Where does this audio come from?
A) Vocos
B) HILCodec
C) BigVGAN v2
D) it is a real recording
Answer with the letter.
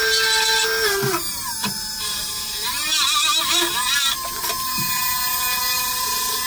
C